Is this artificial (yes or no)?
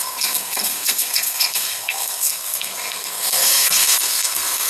yes